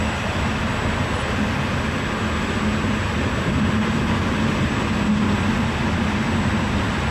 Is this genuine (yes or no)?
yes